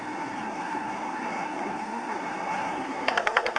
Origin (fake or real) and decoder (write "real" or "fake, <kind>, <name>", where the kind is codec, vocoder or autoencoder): fake, codec, SNAC